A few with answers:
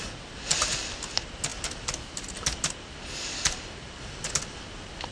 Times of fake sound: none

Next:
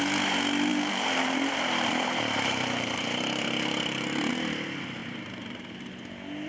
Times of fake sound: 0.7-4.3 (vocoder, BigVGAN v2); 5.0-6.1

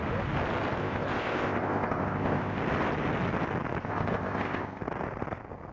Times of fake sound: 0.8-2.6 (codec, ZipCodec); 3.8-4.8